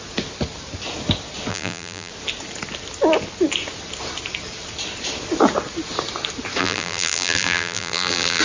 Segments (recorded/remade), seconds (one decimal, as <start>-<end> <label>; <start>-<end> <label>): 0.0-1.5 recorded; 1.5-2.1 remade; 2.1-6.6 recorded; 6.6-8.4 remade